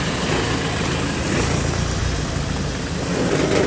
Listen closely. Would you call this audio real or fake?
real